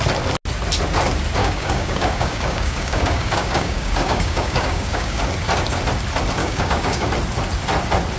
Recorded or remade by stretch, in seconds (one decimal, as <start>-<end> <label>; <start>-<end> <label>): 0.0-1.4 recorded; 1.4-5.2 remade; 5.2-6.4 recorded; 6.4-7.1 remade; 7.1-8.2 recorded